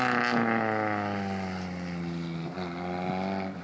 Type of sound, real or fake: real